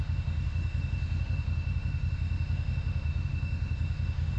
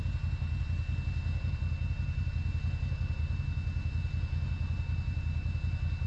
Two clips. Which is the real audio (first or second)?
second